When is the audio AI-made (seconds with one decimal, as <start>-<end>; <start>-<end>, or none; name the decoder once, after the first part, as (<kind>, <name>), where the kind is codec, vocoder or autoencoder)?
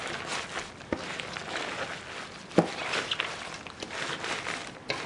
none